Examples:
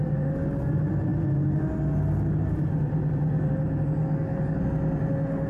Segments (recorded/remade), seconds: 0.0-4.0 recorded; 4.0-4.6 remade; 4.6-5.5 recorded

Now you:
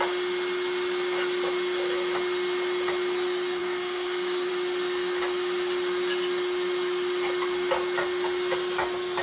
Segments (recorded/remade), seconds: 0.0-3.6 recorded; 3.6-4.5 remade; 4.5-9.2 recorded

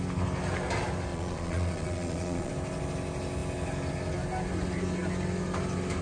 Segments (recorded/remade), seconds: 0.0-1.1 recorded; 1.1-2.5 remade; 2.5-6.0 recorded

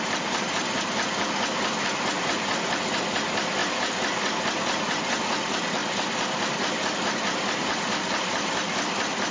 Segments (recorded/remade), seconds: 0.0-9.3 recorded

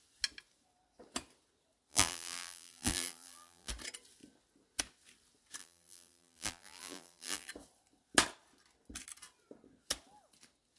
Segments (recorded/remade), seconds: 0.0-1.9 recorded; 1.9-3.7 remade; 3.7-5.6 recorded; 5.6-7.5 remade; 7.5-10.8 recorded

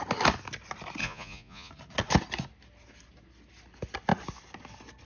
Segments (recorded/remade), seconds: 0.0-1.0 recorded; 1.0-1.7 remade; 1.7-5.0 recorded

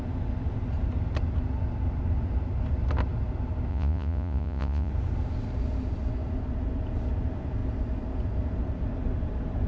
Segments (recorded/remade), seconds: 0.0-3.7 recorded; 3.7-4.9 remade; 4.9-9.7 recorded

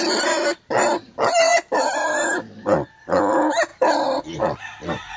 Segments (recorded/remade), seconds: 0.0-5.2 recorded